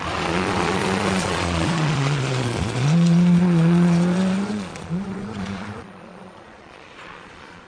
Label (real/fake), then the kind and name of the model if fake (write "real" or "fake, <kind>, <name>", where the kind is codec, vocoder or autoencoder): fake, vocoder, Vocos